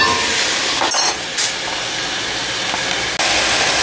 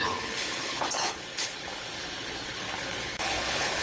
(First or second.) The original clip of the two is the first